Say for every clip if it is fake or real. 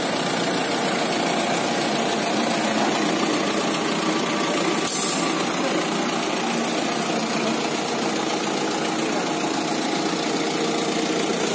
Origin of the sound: real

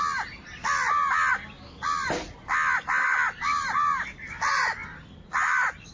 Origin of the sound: real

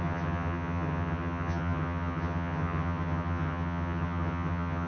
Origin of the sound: fake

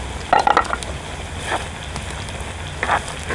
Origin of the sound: real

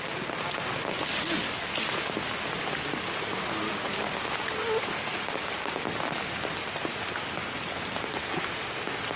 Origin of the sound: real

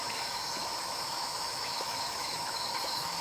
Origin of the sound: fake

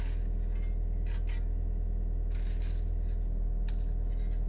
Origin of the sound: real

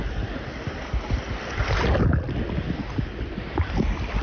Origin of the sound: real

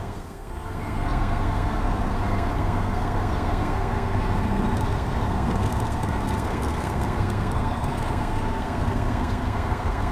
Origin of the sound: fake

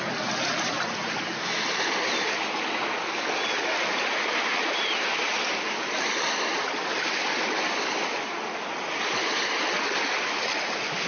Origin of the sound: real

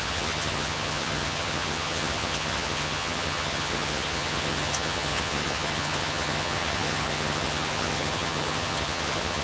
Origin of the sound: fake